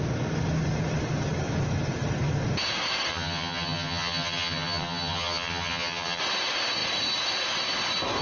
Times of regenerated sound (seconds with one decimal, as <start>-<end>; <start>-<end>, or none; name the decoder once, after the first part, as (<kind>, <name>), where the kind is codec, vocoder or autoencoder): 3.1-6.2 (vocoder, HiFi-GAN)